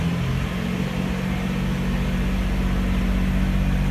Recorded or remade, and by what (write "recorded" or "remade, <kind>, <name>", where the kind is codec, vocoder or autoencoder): recorded